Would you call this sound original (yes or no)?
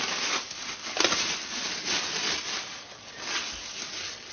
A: yes